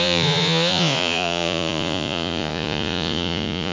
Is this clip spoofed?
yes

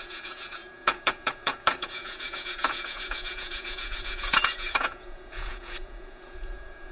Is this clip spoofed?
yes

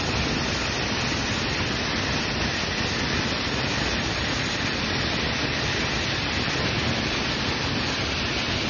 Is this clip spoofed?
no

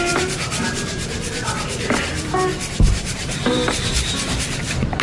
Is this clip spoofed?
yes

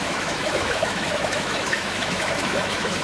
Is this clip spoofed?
yes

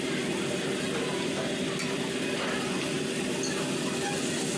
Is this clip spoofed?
no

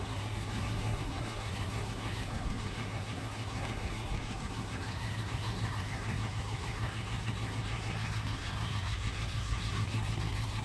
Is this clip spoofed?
yes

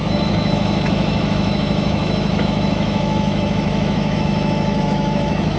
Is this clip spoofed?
yes